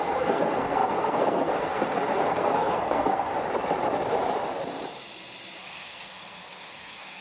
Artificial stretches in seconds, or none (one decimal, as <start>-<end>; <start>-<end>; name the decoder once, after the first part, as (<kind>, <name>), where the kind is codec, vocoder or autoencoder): 0.0-3.3 (codec, SNAC); 5.6-7.2